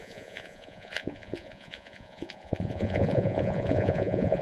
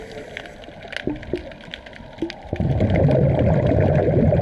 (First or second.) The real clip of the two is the second